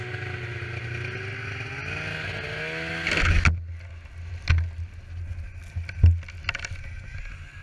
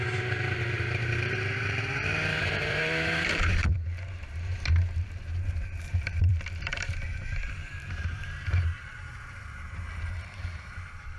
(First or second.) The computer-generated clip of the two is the second